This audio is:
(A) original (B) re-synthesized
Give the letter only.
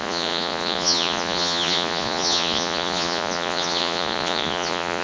B